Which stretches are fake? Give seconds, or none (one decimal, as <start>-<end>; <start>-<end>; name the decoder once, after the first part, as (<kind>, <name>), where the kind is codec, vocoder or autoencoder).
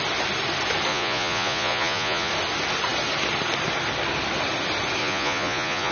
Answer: 0.9-2.3 (vocoder, Vocos); 5.0-5.9